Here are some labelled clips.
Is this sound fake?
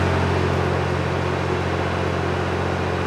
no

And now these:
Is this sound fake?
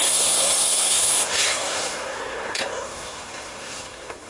yes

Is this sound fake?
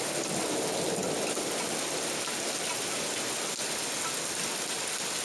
no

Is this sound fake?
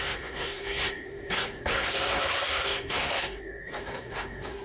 yes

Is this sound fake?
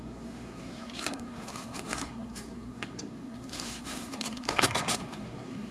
yes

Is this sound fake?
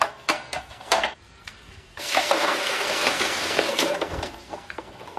yes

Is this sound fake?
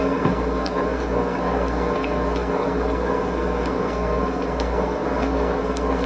yes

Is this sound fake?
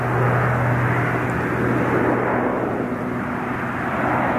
no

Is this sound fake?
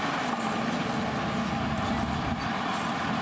no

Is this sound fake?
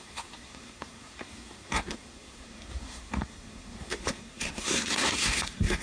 yes